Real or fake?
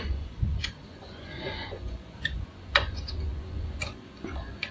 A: fake